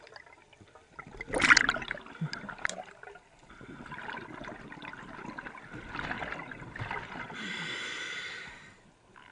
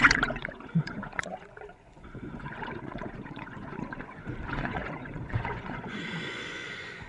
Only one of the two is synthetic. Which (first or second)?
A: second